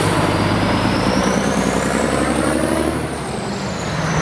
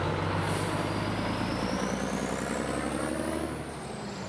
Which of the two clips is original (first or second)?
second